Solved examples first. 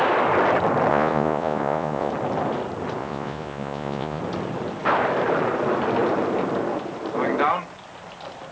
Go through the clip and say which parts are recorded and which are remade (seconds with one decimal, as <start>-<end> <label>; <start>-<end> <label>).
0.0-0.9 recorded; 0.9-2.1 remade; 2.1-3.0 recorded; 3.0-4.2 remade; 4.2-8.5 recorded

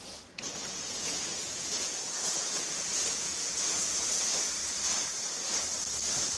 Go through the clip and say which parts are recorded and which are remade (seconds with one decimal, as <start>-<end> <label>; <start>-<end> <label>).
0.0-4.6 remade; 4.6-6.4 recorded

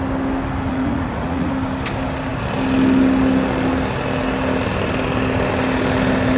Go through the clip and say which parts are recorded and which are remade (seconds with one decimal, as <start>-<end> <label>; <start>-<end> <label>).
0.0-0.7 recorded; 0.7-1.5 remade; 1.5-6.4 recorded

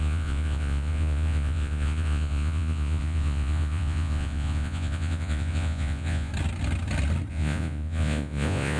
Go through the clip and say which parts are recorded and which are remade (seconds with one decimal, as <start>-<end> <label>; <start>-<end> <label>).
0.0-6.3 remade; 6.3-7.3 recorded; 7.3-8.8 remade

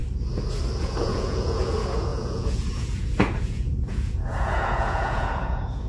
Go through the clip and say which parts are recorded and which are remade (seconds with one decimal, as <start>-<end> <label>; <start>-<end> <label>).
0.0-0.8 recorded; 0.8-5.9 remade